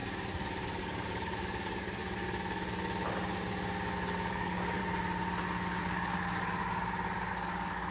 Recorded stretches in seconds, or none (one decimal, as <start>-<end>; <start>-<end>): 0.0-0.8; 2.0-4.3; 4.8-5.8; 6.6-7.3